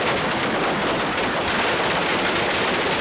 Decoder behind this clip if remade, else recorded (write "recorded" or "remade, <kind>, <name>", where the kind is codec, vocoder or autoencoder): recorded